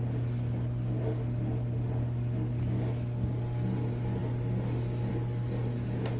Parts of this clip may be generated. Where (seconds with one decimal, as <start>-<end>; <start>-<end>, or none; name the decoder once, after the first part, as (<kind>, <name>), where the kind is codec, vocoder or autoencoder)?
none